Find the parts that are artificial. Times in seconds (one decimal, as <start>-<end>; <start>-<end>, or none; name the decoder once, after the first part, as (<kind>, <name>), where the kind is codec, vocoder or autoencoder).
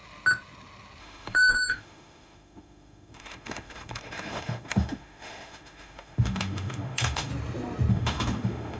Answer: 1.0-7.3 (autoencoder, DAC-VAE); 7.9-8.8